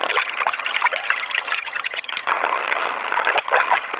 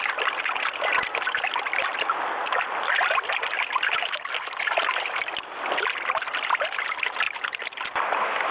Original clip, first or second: second